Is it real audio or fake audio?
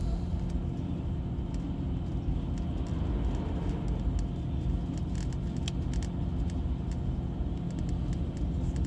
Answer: real